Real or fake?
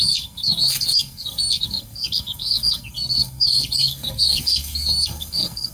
fake